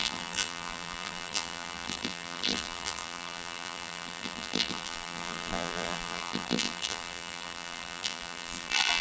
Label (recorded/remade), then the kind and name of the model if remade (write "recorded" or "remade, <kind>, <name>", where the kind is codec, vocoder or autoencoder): remade, vocoder, BigVGAN v2